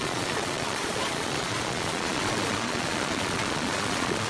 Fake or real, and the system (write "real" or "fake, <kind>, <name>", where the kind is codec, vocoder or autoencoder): fake, vocoder, Vocos